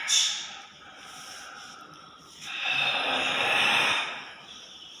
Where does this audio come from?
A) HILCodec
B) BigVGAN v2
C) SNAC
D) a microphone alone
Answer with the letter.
D